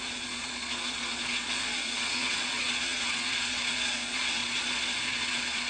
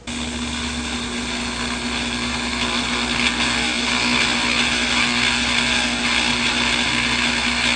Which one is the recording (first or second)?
second